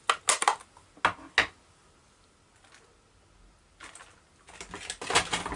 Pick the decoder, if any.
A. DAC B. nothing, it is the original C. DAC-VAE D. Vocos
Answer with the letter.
B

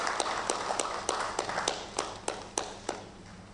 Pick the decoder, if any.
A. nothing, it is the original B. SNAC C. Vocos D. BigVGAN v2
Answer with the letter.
A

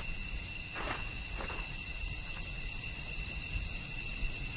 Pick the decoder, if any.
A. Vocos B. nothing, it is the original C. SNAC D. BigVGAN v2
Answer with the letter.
A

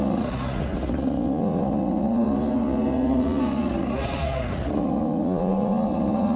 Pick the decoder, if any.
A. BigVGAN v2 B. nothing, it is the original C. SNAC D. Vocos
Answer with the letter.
D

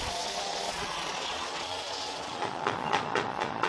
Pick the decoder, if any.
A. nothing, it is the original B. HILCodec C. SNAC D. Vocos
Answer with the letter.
D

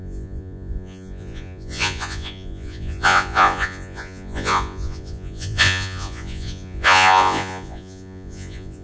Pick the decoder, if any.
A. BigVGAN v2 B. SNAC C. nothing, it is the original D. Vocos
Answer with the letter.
D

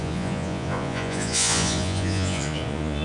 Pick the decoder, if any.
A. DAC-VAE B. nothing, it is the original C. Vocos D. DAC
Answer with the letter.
C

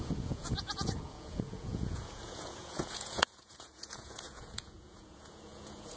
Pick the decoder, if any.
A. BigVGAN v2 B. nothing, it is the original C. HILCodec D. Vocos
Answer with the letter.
D